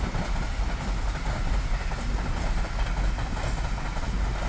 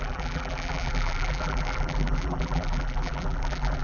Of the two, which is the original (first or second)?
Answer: first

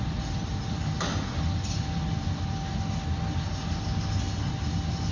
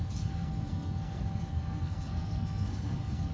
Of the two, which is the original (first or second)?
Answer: first